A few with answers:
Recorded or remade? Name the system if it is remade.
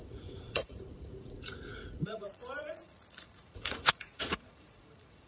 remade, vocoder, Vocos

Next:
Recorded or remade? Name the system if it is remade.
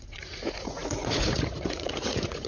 remade, vocoder, Vocos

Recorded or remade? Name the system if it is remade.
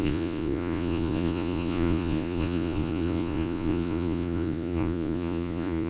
remade, vocoder, Vocos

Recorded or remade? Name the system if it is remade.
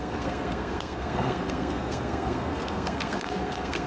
remade, codec, SNAC